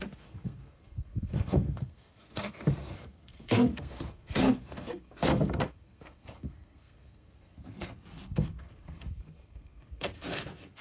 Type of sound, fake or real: fake